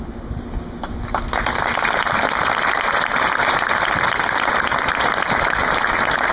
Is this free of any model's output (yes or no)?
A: yes